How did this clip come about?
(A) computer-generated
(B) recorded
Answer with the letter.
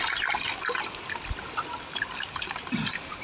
B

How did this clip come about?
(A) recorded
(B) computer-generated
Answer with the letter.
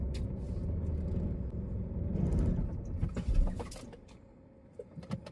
A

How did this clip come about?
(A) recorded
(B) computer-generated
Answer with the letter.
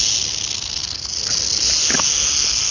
A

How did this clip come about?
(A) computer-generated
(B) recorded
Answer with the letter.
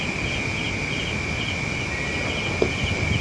B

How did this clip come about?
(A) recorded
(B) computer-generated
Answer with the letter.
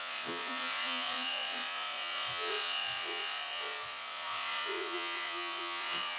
B